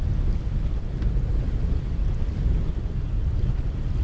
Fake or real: real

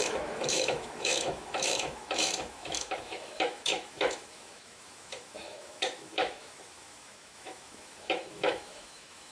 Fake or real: fake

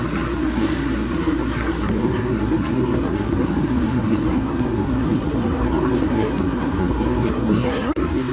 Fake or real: fake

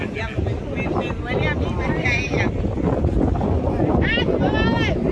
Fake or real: real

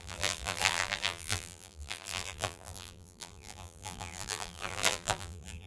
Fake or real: fake